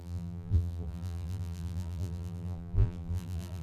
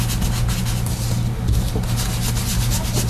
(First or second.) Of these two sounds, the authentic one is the second